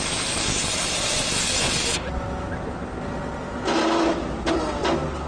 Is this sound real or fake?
real